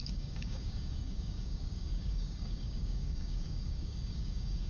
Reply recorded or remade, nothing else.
remade